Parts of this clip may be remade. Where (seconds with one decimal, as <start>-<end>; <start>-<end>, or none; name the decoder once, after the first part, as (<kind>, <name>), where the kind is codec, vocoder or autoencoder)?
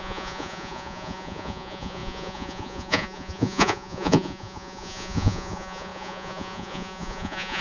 0.0-7.6 (vocoder, Vocos)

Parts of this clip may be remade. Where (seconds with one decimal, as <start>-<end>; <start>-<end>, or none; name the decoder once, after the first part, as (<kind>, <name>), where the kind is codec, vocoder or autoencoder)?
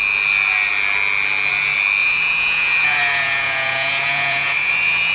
2.0-5.1 (vocoder, Vocos)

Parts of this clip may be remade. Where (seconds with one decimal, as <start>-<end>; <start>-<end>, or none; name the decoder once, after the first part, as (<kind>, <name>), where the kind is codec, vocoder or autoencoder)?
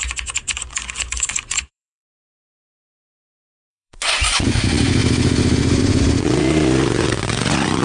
0.0-7.8 (vocoder, Vocos)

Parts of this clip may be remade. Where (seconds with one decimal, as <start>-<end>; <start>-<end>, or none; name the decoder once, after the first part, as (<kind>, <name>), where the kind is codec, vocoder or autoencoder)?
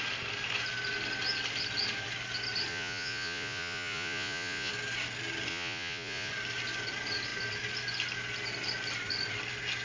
2.7-4.7 (vocoder, Vocos); 5.5-6.3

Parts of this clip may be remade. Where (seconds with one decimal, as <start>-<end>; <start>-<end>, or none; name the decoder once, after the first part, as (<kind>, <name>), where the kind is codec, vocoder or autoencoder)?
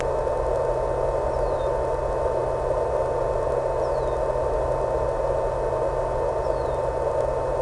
none